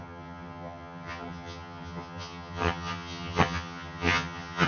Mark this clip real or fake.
fake